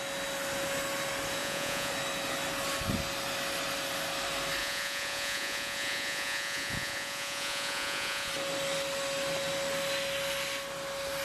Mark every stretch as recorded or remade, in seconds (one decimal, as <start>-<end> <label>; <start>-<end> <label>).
0.0-1.4 recorded; 1.4-1.9 remade; 1.9-4.6 recorded; 4.6-8.3 remade; 8.3-11.2 recorded